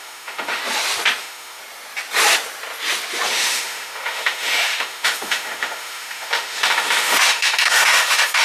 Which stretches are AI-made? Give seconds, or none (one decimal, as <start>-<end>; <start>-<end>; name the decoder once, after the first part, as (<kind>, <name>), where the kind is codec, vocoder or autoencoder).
0.0-0.6 (autoencoder, DAC-VAE); 1.2-1.6; 3.3-8.4